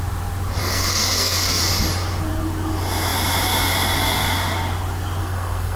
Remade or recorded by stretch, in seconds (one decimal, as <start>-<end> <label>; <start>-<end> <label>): 0.0-0.6 recorded; 0.6-1.6 remade; 1.6-5.2 recorded; 5.2-5.8 remade